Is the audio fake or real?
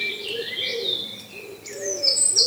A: real